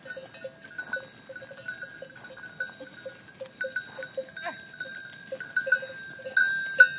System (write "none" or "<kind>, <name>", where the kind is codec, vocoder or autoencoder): none